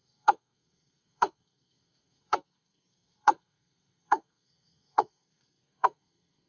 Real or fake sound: fake